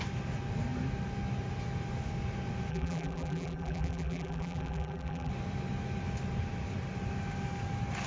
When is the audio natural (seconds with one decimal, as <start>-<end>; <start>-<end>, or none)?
0.0-2.7; 5.3-8.1

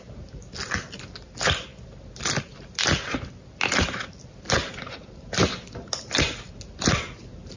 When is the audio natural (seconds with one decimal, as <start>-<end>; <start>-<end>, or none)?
0.0-7.6

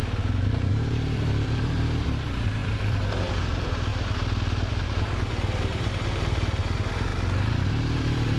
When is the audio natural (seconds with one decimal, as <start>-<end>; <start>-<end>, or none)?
0.0-0.7; 3.9-4.7; 7.1-7.7